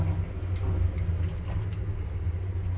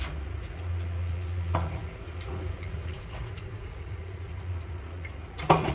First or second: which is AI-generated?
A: second